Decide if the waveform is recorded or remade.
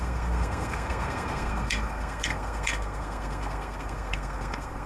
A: remade